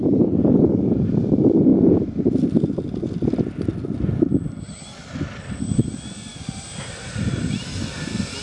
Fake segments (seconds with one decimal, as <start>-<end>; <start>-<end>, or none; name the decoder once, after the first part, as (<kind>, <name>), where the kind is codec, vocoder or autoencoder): none